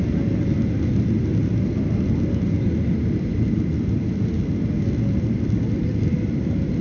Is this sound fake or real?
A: real